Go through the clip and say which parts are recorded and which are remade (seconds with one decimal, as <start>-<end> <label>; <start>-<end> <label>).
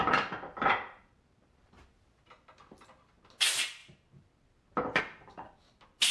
0.0-6.1 recorded